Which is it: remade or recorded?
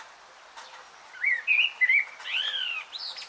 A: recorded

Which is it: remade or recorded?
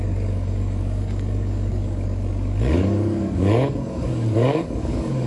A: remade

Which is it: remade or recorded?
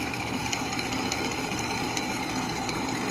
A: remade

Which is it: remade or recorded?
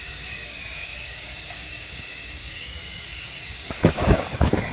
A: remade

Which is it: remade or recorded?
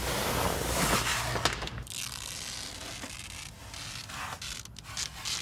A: recorded